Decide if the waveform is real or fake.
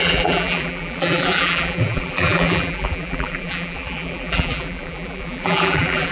fake